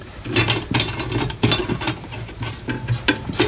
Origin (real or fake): real